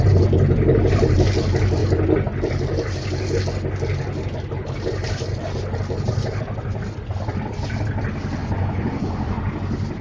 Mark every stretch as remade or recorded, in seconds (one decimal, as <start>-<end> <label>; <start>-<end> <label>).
0.0-8.4 recorded; 8.4-9.4 remade; 9.4-10.0 recorded